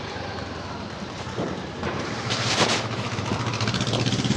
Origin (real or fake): fake